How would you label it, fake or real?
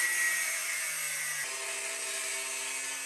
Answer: real